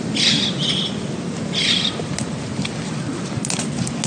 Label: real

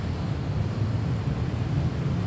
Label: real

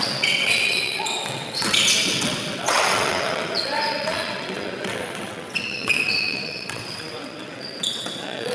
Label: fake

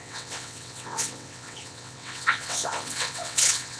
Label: fake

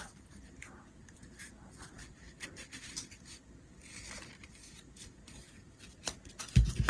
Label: real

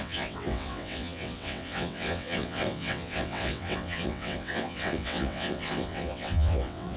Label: fake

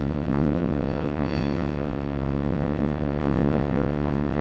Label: fake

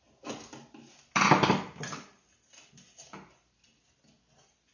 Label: real